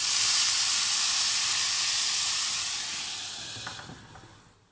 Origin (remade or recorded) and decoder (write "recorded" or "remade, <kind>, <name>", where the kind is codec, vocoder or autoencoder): recorded